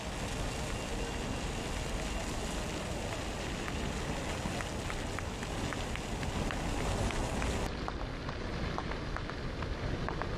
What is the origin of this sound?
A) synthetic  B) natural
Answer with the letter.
B